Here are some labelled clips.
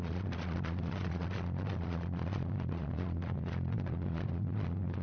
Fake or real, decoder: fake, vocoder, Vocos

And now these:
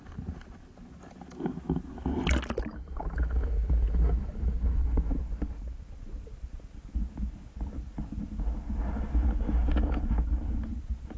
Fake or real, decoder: real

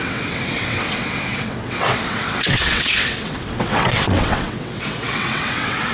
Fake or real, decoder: fake, vocoder, WaveNeXt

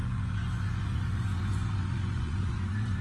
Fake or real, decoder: fake, vocoder, Vocos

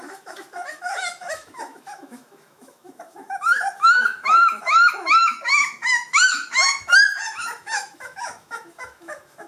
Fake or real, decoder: fake, autoencoder, DAC-VAE